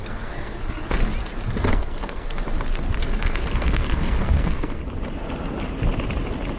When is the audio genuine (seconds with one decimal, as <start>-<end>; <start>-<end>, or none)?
1.0-1.7; 2.4-3.0; 4.8-6.6